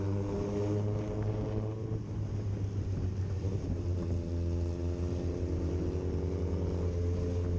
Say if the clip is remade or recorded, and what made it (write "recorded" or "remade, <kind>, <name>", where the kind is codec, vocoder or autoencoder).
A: recorded